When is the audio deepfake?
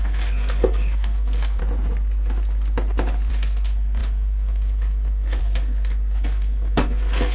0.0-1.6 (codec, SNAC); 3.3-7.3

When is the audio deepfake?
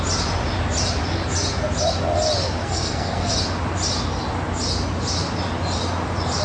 2.6-3.3 (codec, SNAC)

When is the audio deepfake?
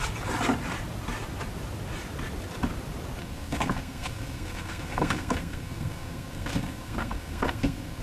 3.2-8.0 (codec, SNAC)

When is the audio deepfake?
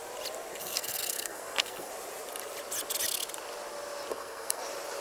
0.6-1.9 (codec, SNAC); 4.1-4.6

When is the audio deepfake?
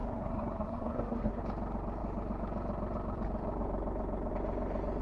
0.0-1.4 (codec, SNAC)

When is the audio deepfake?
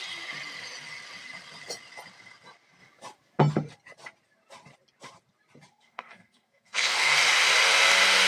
5.7-7.2 (codec, SNAC)